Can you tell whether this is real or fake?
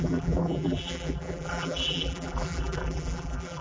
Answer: fake